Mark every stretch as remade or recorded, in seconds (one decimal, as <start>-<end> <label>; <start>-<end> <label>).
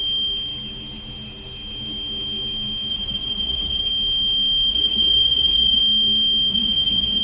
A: 0.0-2.9 recorded; 2.9-3.9 remade; 3.9-4.7 recorded; 4.7-5.8 remade; 5.8-6.5 recorded; 6.5-7.2 remade